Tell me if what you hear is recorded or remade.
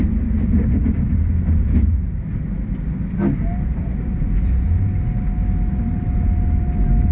recorded